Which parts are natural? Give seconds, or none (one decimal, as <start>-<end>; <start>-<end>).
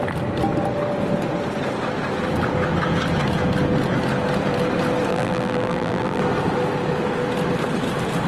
0.0-5.1; 6.2-8.3